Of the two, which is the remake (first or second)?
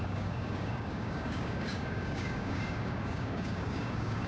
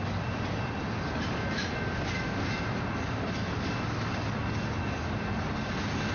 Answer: first